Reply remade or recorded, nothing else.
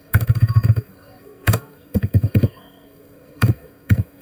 remade